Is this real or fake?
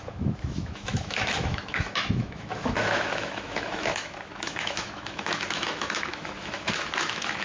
fake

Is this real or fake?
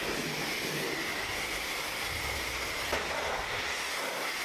real